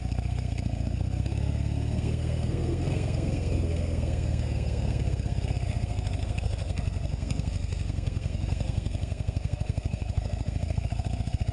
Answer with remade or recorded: remade